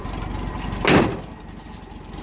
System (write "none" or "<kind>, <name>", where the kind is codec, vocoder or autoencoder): none